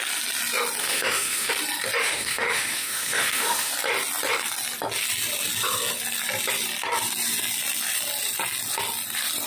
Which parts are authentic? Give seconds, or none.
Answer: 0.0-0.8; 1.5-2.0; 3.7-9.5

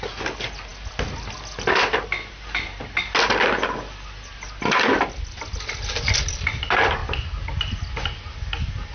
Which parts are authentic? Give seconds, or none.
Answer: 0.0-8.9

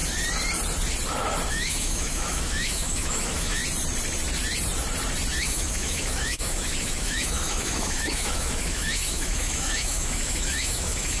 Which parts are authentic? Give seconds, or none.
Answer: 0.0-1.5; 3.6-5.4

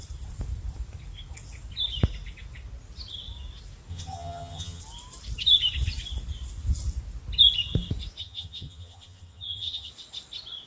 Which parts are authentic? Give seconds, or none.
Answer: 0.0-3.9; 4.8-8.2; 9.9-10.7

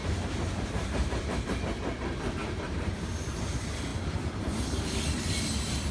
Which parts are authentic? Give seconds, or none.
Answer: 1.6-2.4; 2.9-5.9